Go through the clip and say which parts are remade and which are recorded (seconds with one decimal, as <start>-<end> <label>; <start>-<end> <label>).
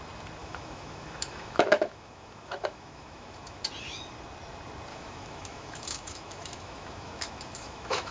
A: 0.0-0.4 recorded; 0.4-3.6 remade; 3.6-4.9 recorded; 4.9-8.1 remade